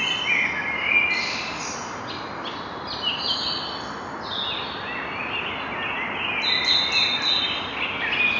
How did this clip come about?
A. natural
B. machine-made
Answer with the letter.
A